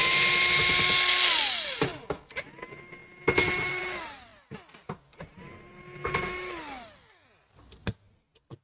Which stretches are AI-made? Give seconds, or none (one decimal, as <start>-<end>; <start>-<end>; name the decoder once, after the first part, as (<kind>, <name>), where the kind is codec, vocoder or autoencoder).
none